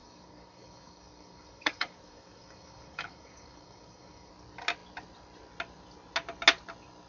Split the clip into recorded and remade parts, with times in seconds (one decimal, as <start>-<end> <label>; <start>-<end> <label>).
0.0-4.3 remade; 4.3-7.1 recorded